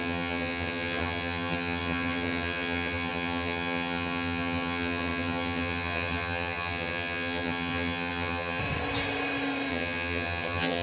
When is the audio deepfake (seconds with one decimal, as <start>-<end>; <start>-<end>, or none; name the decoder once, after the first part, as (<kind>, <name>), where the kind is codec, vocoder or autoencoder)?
0.0-8.6 (vocoder, HiFi-GAN); 9.7-10.8